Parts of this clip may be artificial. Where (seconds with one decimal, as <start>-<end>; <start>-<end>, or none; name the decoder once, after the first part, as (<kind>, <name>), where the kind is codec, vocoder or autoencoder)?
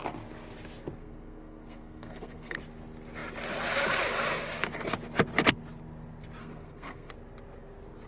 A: 1.0-2.6 (codec, SNAC); 6.4-7.1